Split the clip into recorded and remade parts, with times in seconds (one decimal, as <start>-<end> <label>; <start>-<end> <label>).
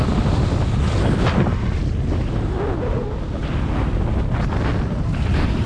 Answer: 0.0-5.7 recorded